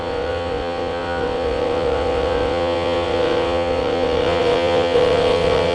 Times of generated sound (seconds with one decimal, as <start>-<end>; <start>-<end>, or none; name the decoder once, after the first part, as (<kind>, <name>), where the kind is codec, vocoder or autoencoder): 0.0-5.7 (vocoder, WaveNeXt)